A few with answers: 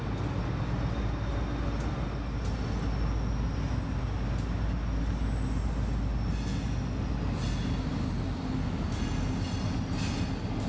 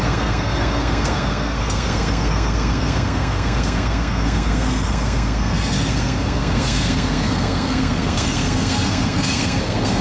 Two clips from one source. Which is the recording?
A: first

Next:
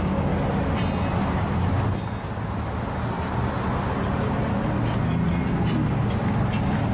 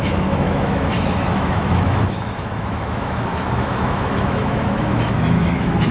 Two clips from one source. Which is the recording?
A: first